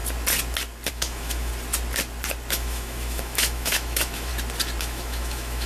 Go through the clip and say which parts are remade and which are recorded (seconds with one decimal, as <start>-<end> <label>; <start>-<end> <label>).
0.0-0.9 recorded; 0.9-1.5 remade; 1.5-2.5 recorded; 2.5-4.3 remade; 4.3-4.8 recorded; 4.8-5.7 remade